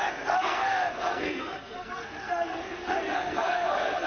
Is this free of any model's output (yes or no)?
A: no